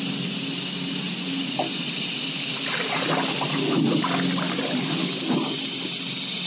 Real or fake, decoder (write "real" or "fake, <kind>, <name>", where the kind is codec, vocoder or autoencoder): real